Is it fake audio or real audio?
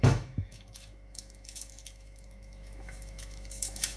fake